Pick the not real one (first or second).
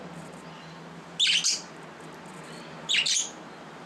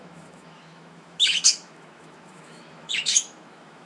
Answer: second